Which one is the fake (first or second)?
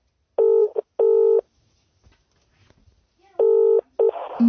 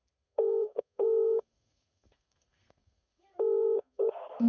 second